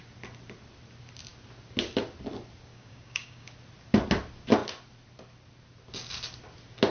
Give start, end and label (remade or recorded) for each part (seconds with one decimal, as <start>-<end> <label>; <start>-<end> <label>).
0.0-2.7 recorded; 2.7-3.5 remade; 3.5-6.9 recorded